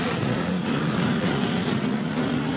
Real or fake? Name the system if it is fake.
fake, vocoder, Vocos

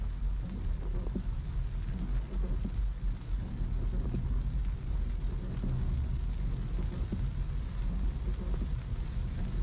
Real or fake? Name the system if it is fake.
real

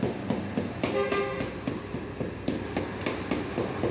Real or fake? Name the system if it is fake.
real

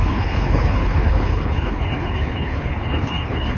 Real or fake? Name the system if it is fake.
fake, codec, HILCodec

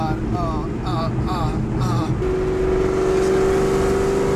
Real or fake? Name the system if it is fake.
real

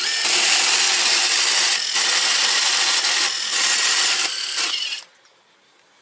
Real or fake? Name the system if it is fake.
real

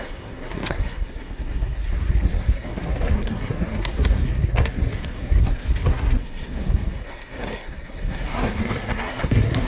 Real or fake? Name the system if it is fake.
fake, codec, SNAC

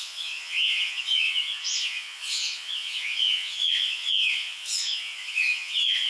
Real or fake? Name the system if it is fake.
fake, vocoder, Vocos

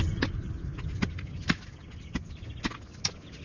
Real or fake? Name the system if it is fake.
real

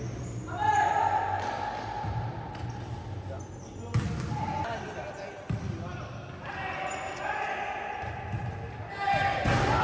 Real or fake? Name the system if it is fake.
real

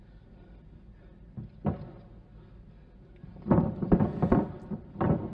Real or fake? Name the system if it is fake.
real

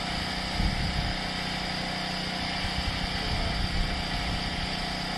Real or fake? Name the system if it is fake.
real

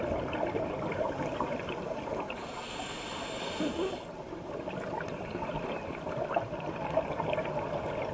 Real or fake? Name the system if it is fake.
real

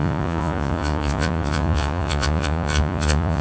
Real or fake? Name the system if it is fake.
fake, vocoder, Vocos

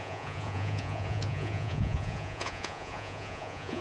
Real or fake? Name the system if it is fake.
fake, vocoder, Vocos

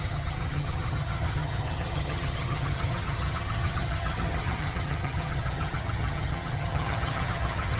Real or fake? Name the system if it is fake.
fake, vocoder, HiFi-GAN